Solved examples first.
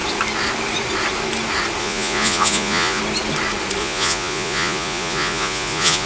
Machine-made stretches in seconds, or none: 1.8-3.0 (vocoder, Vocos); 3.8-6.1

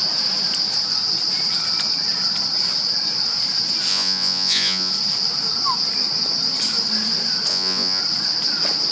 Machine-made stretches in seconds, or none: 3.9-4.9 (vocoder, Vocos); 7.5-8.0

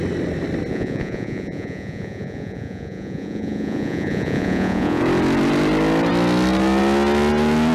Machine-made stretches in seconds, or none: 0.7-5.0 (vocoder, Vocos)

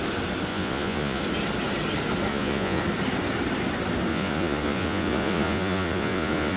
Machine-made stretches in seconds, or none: 0.5-1.2 (vocoder, Vocos); 2.3-2.8; 4.1-6.6

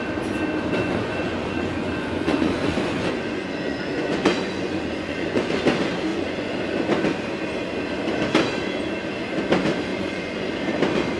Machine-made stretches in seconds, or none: 0.8-5.6 (vocoder, Vocos); 6.1-6.6; 9.9-10.5

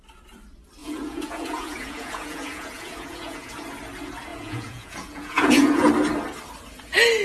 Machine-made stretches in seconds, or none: 0.8-3.5 (vocoder, Vocos); 4.3-5.9

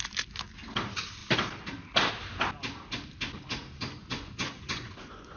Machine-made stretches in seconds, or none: 4.0-5.4 (vocoder, Vocos)